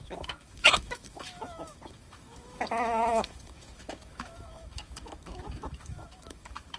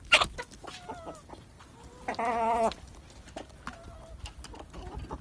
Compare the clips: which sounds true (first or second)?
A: second